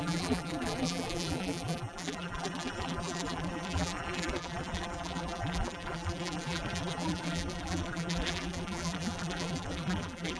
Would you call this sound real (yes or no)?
no